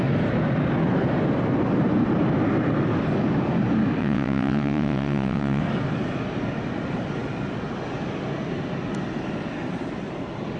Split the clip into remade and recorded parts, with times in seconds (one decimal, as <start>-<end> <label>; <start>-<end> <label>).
0.0-4.0 recorded; 4.0-5.6 remade; 5.6-10.6 recorded